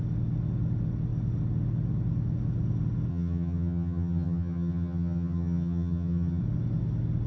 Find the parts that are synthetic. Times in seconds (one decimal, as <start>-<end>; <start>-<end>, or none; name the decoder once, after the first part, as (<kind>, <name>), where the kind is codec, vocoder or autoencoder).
3.1-6.4 (vocoder, HiFi-GAN)